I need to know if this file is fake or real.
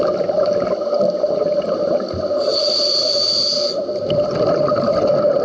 real